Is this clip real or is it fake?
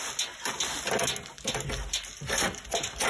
real